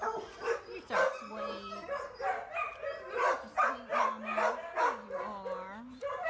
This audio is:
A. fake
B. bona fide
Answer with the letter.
B